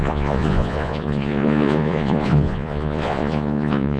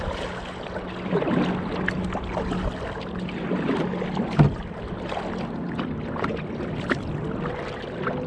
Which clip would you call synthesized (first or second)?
first